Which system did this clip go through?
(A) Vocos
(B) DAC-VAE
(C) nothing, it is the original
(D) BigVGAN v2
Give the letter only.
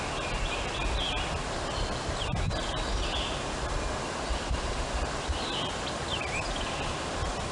C